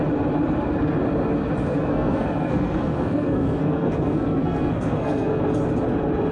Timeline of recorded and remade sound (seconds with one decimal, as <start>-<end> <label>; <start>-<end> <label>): 0.0-1.6 recorded; 1.6-5.4 remade; 5.4-6.3 recorded